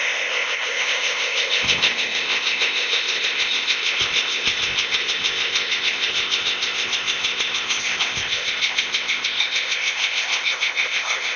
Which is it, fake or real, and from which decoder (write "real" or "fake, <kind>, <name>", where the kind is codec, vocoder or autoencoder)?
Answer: fake, codec, ZipCodec